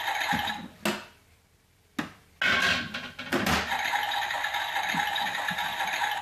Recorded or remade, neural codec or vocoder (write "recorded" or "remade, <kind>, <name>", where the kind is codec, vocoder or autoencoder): recorded